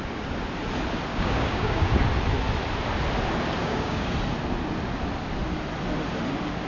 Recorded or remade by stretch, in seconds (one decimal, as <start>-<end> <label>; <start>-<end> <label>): 0.0-1.1 recorded; 1.1-1.9 remade; 1.9-3.6 recorded; 3.6-4.1 remade; 4.1-6.7 recorded